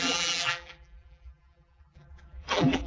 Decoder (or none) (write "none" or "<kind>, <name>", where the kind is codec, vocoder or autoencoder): vocoder, BigVGAN v2